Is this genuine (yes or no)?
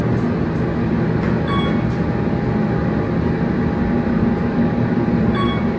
yes